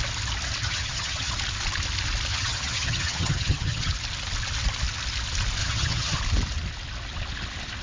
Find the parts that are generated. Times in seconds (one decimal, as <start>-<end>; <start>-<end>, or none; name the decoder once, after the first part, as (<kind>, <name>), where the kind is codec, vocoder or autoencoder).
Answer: 0.6-1.3 (vocoder, HiFi-GAN); 2.3-3.9; 5.6-6.2